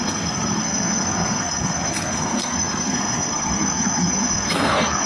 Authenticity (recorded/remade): remade